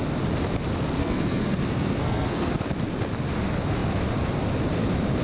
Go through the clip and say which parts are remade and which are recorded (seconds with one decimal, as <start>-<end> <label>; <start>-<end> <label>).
0.0-1.0 recorded; 1.0-2.6 remade; 2.6-5.2 recorded